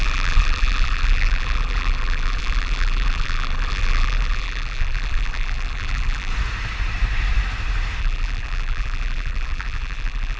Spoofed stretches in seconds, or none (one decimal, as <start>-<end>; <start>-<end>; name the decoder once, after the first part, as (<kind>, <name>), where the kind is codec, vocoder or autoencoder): 0.0-6.3 (vocoder, BigVGAN v2); 8.0-10.4